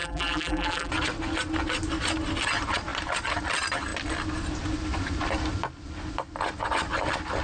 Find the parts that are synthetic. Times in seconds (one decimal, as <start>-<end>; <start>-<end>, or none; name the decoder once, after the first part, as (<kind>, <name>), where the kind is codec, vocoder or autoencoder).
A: 0.0-0.9 (vocoder, BigVGAN v2)